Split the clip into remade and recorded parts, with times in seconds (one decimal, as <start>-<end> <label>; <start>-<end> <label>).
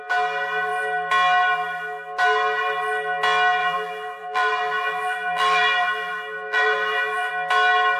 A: 0.0-3.6 recorded; 3.6-7.3 remade; 7.3-8.0 recorded